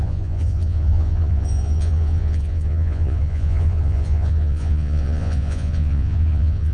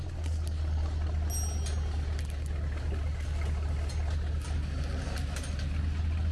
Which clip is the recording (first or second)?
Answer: second